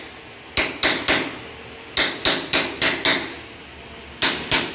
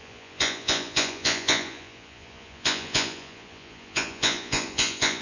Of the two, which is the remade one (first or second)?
second